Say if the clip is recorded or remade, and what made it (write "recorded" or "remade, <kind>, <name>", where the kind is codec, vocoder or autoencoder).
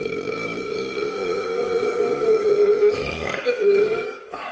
remade, codec, DAC